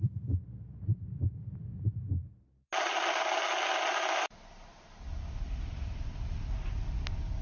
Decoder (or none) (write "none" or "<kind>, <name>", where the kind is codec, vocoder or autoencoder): none